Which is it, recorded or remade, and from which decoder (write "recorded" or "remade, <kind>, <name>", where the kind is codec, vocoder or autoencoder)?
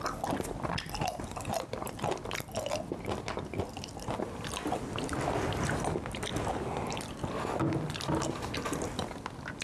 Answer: recorded